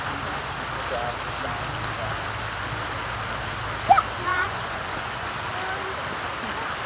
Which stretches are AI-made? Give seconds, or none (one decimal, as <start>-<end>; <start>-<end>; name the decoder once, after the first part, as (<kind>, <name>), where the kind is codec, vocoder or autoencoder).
4.3-5.3 (vocoder, Vocos)